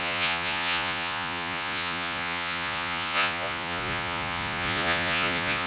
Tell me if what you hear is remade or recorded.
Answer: remade